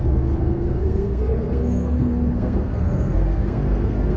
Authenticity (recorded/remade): remade